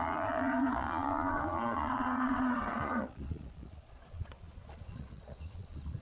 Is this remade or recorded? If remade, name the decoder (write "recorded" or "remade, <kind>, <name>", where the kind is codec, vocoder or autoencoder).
remade, vocoder, Vocos